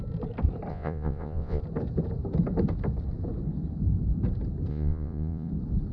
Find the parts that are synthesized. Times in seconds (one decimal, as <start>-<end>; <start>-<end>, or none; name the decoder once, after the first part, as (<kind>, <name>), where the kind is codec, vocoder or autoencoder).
0.7-1.6 (vocoder, Vocos); 4.7-5.5